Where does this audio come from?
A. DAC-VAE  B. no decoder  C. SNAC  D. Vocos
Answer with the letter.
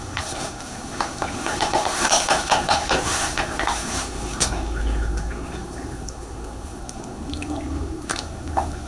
C